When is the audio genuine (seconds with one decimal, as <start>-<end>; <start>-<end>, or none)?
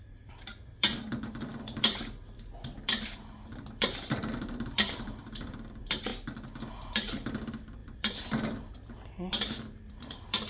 6.1-6.7